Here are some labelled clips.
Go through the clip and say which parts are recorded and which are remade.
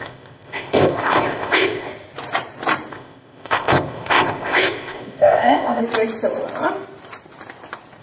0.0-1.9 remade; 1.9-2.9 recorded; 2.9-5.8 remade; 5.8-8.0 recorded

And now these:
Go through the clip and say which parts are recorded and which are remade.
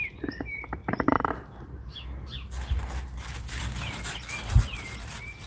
0.0-5.5 recorded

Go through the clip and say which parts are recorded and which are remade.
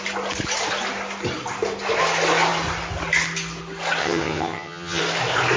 0.0-4.0 recorded; 4.0-5.0 remade; 5.0-5.6 recorded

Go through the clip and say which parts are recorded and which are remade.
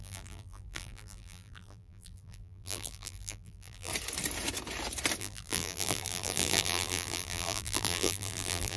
0.0-3.9 remade; 3.9-5.2 recorded; 5.2-8.8 remade